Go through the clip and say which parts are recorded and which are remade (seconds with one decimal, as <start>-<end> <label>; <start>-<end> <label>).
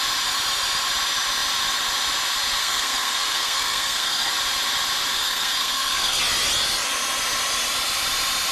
0.0-2.6 recorded; 2.6-4.3 remade; 4.3-5.1 recorded; 5.1-6.2 remade; 6.2-8.5 recorded